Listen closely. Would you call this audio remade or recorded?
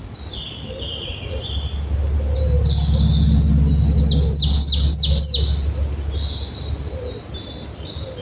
recorded